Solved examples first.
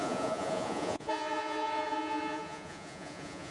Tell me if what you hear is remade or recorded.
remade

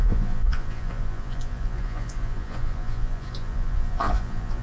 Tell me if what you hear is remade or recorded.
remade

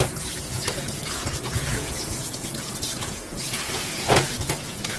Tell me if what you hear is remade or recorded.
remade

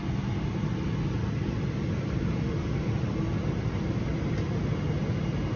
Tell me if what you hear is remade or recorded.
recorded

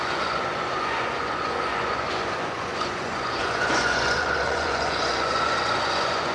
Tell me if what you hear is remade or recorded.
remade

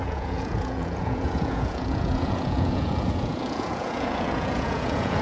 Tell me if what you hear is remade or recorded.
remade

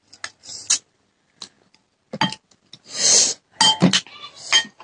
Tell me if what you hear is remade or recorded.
recorded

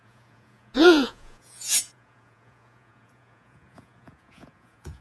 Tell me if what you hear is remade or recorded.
remade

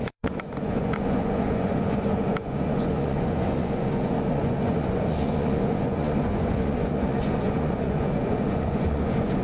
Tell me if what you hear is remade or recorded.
remade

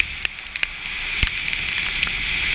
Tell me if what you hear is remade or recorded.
recorded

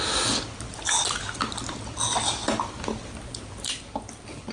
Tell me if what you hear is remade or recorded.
recorded